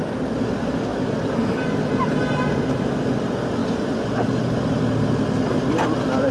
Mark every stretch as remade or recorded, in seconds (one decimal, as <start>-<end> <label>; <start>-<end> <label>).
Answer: 0.0-6.3 recorded